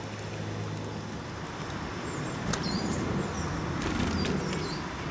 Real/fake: real